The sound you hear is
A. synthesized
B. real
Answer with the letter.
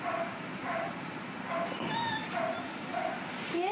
A